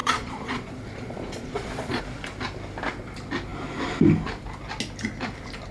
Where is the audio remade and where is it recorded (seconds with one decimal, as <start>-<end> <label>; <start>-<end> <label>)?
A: 0.0-2.0 remade; 2.0-5.7 recorded